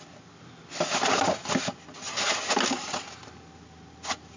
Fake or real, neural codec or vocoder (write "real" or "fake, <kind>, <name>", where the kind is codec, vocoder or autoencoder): real